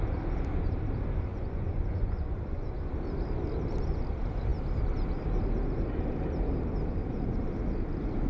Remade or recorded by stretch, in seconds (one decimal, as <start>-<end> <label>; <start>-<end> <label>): 0.0-1.3 recorded; 1.3-2.9 remade; 2.9-8.3 recorded